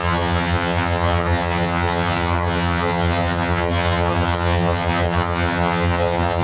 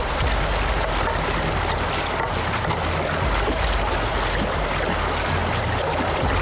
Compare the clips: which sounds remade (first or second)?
first